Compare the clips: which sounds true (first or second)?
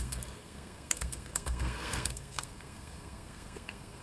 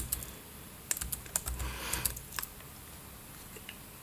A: second